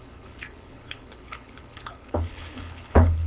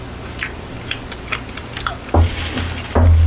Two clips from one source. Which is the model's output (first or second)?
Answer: first